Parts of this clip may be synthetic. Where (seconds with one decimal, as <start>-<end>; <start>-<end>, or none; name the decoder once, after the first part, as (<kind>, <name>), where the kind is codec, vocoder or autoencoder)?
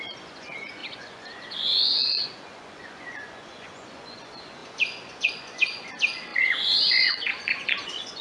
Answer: 0.0-8.2 (vocoder, Vocos)